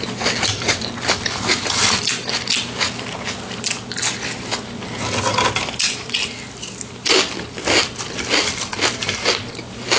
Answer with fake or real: real